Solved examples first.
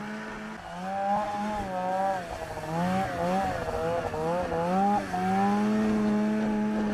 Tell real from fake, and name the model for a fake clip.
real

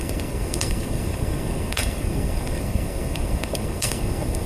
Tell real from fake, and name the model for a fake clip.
fake, codec, SNAC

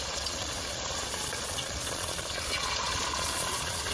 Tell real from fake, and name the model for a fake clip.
fake, vocoder, Vocos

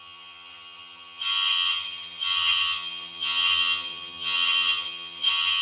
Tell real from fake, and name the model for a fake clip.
fake, vocoder, HiFi-GAN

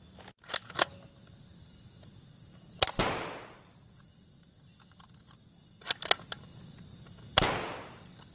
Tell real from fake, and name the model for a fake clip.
real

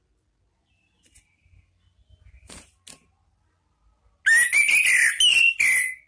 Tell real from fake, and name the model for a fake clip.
real